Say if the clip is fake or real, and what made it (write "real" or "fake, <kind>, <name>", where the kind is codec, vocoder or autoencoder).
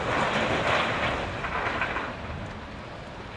real